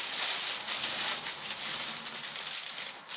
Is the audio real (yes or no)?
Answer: yes